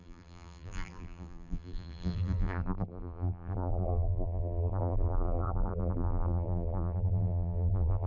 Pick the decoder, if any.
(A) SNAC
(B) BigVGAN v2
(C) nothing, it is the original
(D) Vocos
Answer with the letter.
B